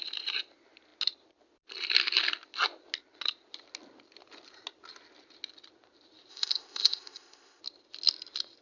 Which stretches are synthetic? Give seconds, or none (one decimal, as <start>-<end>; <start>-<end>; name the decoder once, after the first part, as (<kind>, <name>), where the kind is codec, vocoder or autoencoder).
6.3-7.6 (codec, ZipCodec)